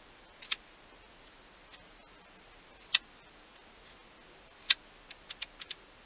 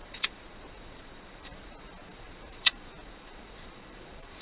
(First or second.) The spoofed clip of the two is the second